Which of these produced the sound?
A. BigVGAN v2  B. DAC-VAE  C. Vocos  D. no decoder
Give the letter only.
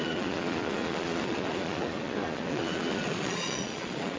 C